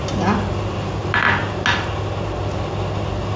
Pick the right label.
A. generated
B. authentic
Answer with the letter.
B